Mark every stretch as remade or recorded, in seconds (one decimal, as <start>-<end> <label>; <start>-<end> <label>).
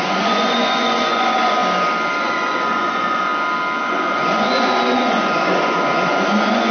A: 0.0-1.6 remade; 1.6-2.2 recorded; 2.2-3.3 remade; 3.3-3.8 recorded; 3.8-6.7 remade